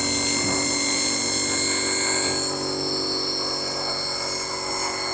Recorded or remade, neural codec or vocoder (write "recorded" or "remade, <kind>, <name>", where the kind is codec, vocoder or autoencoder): recorded